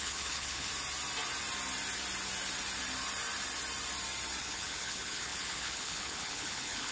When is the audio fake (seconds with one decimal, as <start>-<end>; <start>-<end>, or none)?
0.0-0.7; 4.4-6.9